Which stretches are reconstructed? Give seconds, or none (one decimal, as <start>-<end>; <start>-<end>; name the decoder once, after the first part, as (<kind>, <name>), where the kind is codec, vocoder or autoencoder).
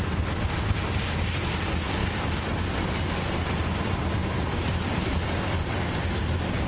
none